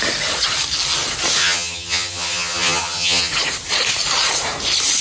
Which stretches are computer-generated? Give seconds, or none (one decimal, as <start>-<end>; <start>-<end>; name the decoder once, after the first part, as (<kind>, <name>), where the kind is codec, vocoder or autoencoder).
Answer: 1.4-3.3 (vocoder, HiFi-GAN)